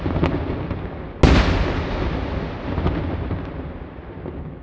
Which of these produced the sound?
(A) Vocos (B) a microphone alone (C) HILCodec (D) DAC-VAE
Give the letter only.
B